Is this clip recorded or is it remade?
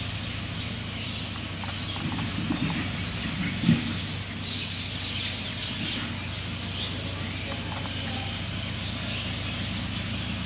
recorded